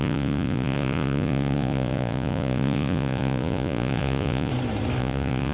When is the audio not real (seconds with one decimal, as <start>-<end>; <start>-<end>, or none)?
0.0-4.5; 5.0-5.5

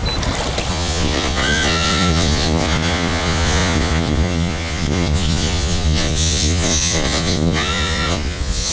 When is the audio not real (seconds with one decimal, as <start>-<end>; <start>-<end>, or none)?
0.7-8.7